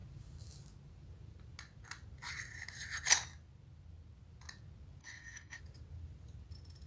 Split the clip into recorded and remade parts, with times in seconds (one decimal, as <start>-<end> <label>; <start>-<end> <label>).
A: 0.0-5.0 recorded; 5.0-5.6 remade; 5.6-6.9 recorded